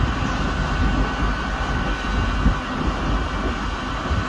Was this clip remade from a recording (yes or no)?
no